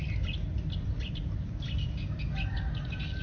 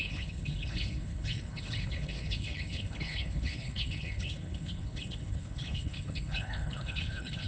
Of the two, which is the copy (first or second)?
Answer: second